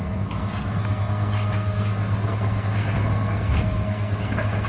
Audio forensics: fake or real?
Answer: fake